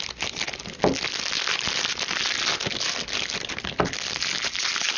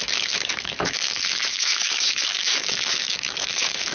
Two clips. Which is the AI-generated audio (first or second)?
second